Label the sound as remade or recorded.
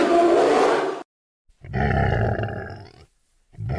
recorded